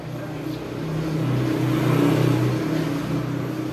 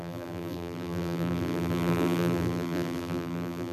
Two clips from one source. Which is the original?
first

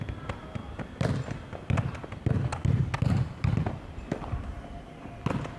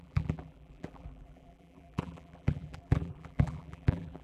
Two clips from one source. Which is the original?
first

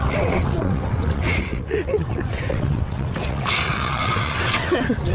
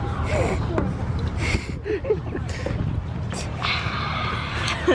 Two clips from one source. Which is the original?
second